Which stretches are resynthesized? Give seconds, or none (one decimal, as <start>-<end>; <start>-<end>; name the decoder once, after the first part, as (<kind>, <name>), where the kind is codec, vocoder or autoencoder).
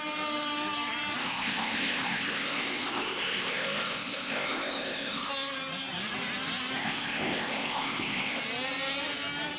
1.2-5.3 (codec, ZipCodec); 6.8-8.4